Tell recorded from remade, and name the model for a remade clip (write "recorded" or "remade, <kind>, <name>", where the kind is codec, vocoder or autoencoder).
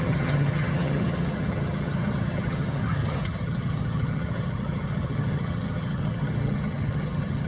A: remade, vocoder, HiFi-GAN